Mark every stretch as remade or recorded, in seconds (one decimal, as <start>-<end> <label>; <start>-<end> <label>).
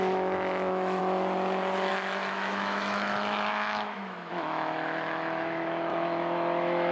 0.0-1.0 remade; 1.0-1.9 recorded; 1.9-6.9 remade